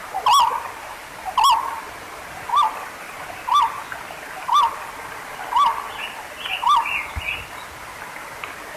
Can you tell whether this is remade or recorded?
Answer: recorded